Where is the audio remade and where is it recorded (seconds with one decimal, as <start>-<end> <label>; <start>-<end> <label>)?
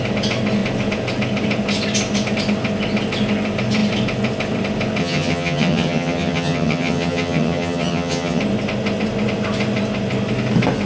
0.0-5.0 recorded; 5.0-8.4 remade; 8.4-10.9 recorded